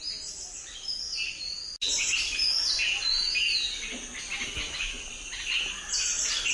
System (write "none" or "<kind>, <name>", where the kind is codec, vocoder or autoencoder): none